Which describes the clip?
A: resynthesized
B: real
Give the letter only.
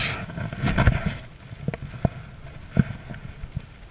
B